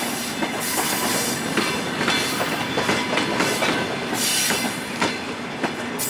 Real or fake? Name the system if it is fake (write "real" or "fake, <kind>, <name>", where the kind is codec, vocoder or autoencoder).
real